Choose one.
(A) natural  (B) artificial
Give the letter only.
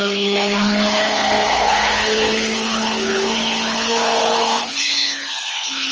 B